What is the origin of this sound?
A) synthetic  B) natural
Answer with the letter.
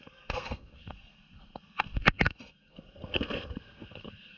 A